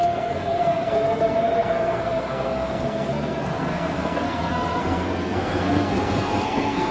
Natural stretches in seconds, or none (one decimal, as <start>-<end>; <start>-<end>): none